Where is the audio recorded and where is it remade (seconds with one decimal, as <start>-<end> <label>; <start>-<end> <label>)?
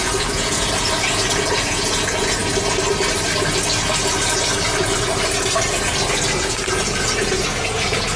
0.0-2.4 remade; 2.4-6.4 recorded; 6.4-8.2 remade